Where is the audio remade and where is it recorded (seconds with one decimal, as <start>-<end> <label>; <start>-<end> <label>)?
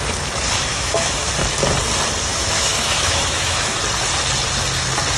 0.0-0.7 recorded; 0.7-1.3 remade; 1.3-2.3 recorded; 2.3-3.8 remade; 3.8-5.2 recorded